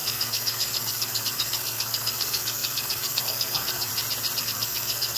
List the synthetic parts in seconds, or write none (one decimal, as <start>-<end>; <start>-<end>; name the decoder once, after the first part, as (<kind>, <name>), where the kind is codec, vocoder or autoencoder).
0.0-3.9 (codec, SNAC); 4.4-5.2